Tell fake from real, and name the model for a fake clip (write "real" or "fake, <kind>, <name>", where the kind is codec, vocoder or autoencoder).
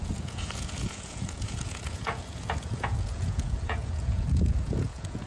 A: fake, vocoder, Vocos